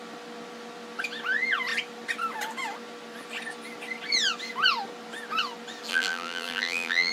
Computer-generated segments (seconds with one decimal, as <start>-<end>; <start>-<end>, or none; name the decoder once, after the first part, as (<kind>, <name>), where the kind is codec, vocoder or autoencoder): 5.9-7.1 (vocoder, BigVGAN v2)